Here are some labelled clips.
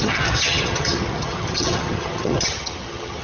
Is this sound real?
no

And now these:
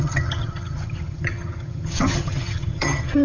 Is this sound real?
no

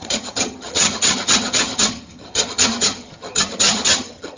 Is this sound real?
no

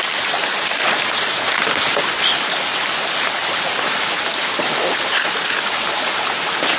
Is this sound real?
yes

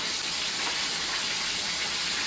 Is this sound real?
yes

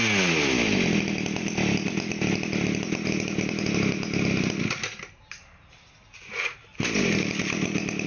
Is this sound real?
yes